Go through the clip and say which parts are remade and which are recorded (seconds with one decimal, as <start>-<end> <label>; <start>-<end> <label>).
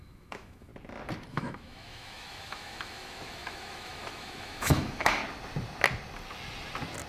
0.0-0.7 remade; 0.7-1.3 recorded; 1.3-5.2 remade; 5.2-7.1 recorded